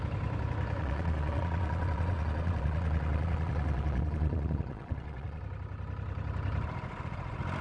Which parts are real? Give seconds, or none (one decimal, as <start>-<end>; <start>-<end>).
0.0-0.8; 5.4-7.6